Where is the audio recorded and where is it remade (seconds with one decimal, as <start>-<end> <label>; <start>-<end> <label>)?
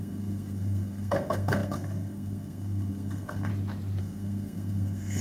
0.0-3.5 remade; 3.5-4.0 recorded; 4.0-5.2 remade